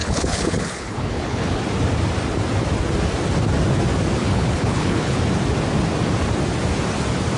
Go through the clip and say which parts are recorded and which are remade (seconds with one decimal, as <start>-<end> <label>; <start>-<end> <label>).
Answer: 0.0-1.6 remade; 1.6-4.2 recorded; 4.2-5.2 remade; 5.2-7.4 recorded